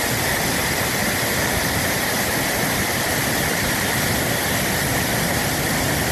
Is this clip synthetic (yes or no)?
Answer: no